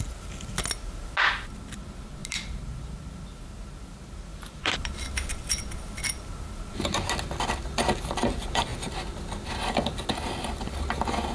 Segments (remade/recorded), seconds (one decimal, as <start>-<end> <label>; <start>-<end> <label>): 0.0-2.2 recorded; 2.2-2.8 remade; 2.8-4.3 recorded; 4.3-5.0 remade; 5.0-11.3 recorded